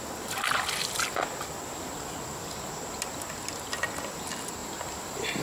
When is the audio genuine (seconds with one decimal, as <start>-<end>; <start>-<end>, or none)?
0.0-5.4